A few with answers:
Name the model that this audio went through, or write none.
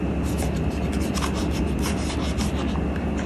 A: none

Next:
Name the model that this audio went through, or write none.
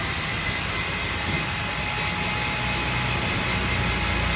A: none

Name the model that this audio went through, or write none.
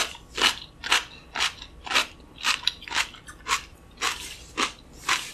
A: none